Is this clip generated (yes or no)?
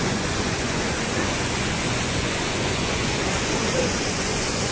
yes